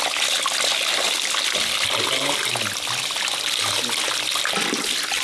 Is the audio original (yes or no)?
yes